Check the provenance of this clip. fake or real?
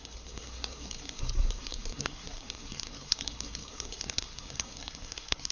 fake